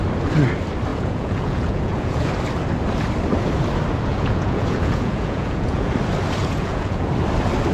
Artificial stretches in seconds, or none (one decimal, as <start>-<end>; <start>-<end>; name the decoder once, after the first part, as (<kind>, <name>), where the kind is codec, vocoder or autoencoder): 0.9-2.3 (vocoder, Vocos); 4.1-5.9; 6.4-7.1